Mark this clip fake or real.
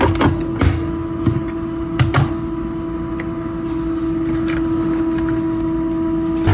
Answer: real